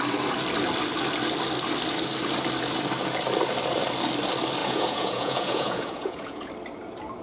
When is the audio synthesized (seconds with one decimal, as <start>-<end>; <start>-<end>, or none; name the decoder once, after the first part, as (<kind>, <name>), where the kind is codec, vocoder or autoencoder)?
4.6-6.5 (vocoder, Vocos)